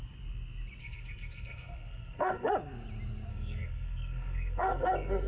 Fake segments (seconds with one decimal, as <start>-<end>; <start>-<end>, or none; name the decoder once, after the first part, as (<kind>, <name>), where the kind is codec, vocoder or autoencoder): 0.8-2.5 (codec, SNAC); 3.3-5.3